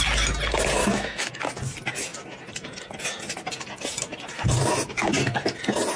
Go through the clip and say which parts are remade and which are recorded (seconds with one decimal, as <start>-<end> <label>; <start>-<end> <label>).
0.0-0.8 recorded; 0.8-1.3 remade; 1.3-6.0 recorded